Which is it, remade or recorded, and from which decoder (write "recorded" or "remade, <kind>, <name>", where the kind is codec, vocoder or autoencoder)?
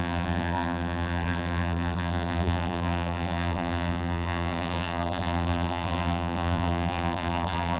remade, vocoder, BigVGAN v2